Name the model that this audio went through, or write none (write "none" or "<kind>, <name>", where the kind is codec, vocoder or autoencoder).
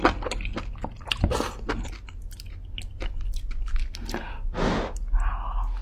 none